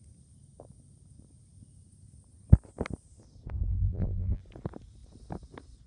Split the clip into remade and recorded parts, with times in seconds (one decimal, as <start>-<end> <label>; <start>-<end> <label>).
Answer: 0.0-3.7 recorded; 3.7-4.4 remade; 4.4-5.9 recorded